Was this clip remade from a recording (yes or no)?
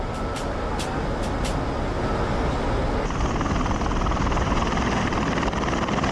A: no